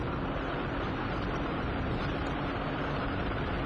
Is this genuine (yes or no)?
no